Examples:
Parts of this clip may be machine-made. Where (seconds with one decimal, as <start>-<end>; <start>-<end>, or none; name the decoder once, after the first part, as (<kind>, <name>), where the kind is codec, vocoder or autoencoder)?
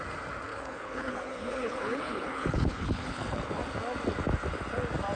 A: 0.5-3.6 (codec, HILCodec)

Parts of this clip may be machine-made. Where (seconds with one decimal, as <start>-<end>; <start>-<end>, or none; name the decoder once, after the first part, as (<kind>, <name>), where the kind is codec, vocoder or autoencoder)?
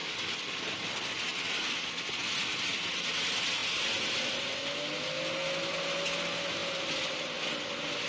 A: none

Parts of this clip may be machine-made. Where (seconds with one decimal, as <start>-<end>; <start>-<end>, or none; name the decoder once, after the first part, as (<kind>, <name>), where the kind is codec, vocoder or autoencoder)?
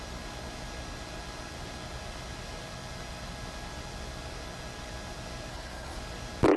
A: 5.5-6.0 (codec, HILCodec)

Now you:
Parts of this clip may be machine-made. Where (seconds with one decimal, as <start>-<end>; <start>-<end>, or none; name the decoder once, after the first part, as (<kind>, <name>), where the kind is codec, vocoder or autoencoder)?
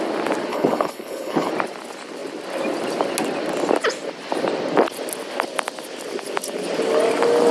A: 0.5-1.5 (codec, HILCodec)